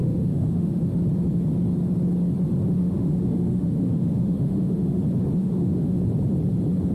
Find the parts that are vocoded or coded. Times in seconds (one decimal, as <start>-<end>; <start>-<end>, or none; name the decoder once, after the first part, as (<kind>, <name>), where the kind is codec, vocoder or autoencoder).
0.0-0.8 (autoencoder, DAC-VAE); 2.8-5.0; 5.4-6.0